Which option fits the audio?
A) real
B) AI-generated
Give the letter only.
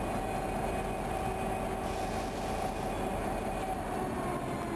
A